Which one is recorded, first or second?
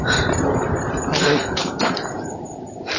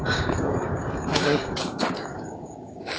first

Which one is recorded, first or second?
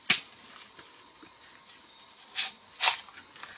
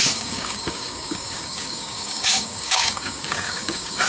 first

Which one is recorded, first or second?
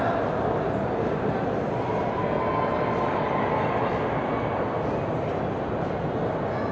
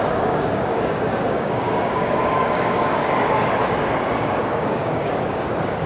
first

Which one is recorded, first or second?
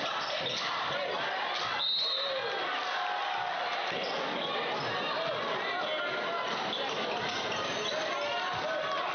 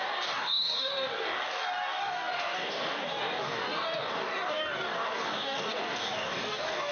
first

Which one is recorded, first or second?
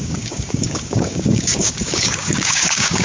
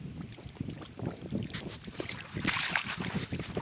second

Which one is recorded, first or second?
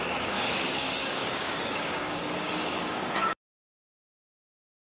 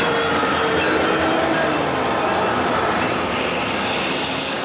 second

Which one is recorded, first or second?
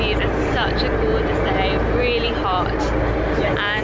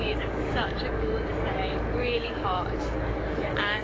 first